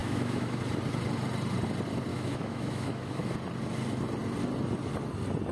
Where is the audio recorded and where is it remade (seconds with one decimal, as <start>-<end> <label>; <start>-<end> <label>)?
0.0-0.6 remade; 0.6-2.1 recorded; 2.1-3.3 remade; 3.3-5.5 recorded